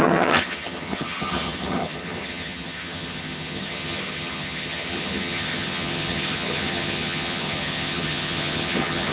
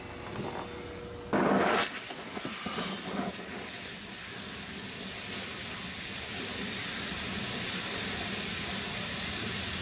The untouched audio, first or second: second